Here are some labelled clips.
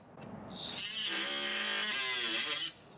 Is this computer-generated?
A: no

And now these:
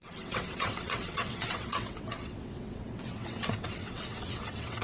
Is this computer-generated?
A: yes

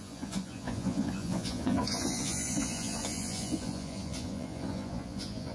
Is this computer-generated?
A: yes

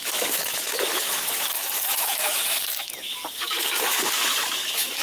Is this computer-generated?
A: yes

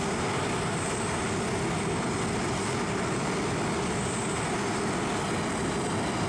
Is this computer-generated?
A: no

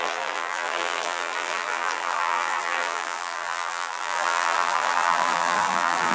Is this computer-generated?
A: yes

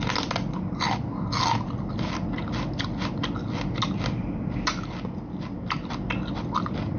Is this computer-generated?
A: no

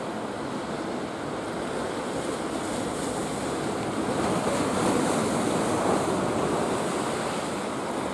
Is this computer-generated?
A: no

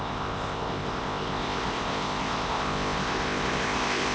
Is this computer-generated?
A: yes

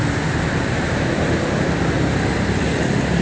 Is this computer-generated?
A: no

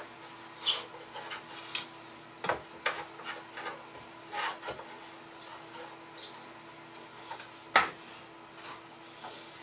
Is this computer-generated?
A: no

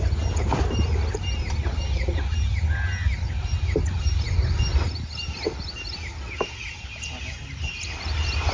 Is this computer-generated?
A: no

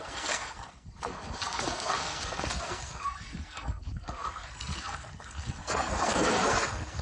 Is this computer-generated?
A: yes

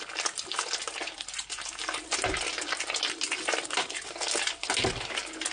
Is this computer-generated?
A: no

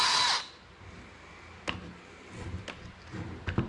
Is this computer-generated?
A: no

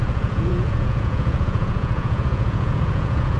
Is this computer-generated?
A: yes